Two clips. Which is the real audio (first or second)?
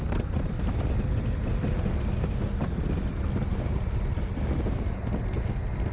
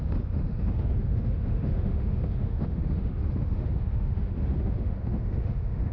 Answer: first